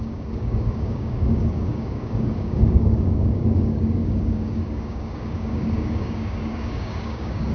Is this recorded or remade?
remade